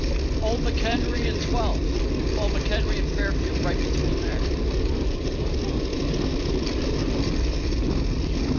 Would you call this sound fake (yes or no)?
yes